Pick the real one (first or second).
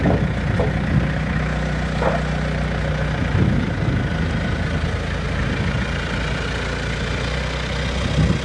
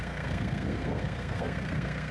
first